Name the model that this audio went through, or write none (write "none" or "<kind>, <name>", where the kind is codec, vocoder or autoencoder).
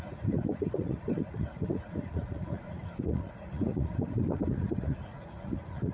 vocoder, Vocos